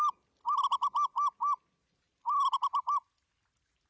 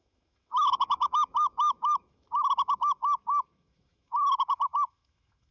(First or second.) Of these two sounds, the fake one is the second